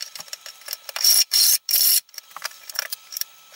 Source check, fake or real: fake